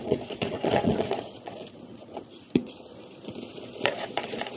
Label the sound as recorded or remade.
remade